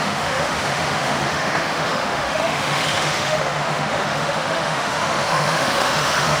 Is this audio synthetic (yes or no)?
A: yes